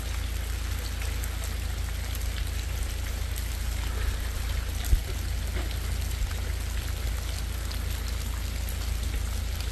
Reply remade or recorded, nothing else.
recorded